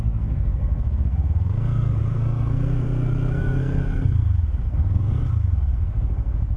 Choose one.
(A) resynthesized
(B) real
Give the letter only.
A